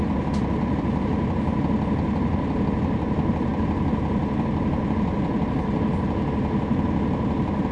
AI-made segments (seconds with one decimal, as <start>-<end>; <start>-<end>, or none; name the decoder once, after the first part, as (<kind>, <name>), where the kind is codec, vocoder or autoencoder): none